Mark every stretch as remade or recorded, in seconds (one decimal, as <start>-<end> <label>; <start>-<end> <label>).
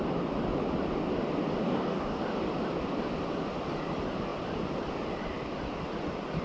0.0-1.6 recorded; 1.6-2.2 remade; 2.2-6.4 recorded